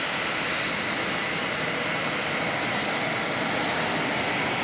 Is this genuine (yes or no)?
yes